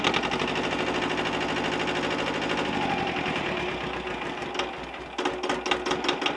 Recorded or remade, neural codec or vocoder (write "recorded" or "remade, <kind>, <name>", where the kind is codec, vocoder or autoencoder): recorded